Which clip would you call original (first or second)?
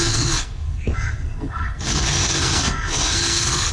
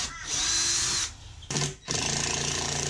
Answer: second